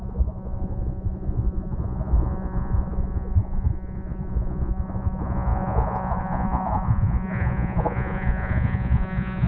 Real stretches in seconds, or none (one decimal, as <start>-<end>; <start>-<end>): none